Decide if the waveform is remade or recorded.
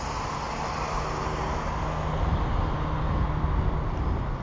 recorded